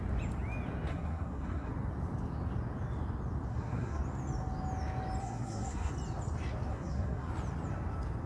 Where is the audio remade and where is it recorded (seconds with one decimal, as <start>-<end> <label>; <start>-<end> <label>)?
0.0-0.9 recorded; 0.9-1.7 remade; 1.7-3.5 recorded; 3.5-4.0 remade; 4.0-5.2 recorded; 5.2-5.9 remade; 5.9-6.7 recorded; 6.7-7.3 remade; 7.3-8.3 recorded